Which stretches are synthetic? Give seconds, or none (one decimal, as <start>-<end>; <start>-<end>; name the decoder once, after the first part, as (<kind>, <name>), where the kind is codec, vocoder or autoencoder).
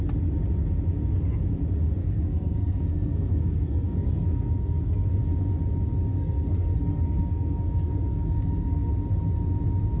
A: 2.0-5.2 (codec, SNAC); 6.1-8.9